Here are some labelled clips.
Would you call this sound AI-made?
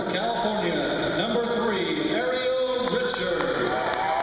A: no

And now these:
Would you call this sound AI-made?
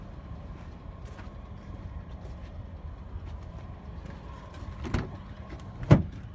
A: no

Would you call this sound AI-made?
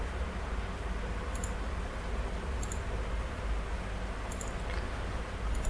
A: no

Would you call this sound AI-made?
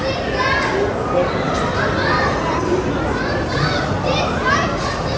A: no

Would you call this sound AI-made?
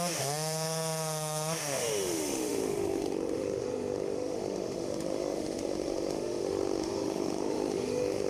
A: yes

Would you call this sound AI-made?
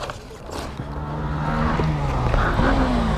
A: no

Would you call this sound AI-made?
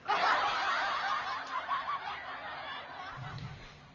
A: no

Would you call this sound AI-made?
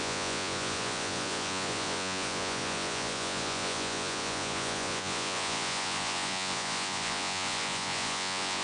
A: yes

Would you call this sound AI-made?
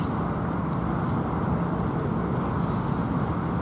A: no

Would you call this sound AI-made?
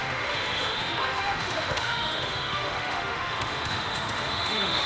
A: yes